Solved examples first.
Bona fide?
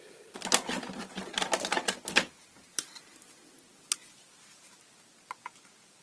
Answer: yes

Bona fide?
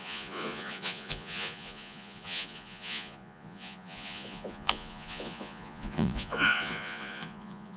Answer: no